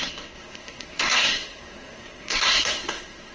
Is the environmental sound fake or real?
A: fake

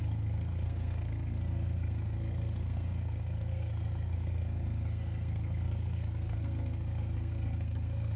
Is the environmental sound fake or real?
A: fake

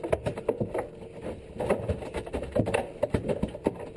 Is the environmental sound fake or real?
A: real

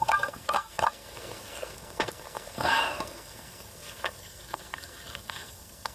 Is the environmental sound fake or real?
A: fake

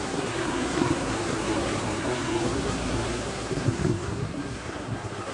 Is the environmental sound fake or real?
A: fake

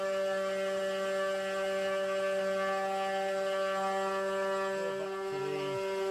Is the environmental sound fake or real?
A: real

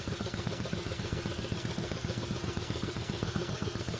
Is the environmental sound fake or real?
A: fake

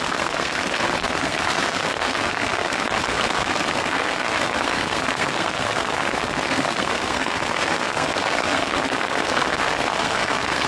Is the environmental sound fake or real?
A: fake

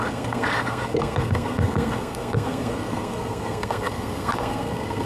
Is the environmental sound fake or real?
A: fake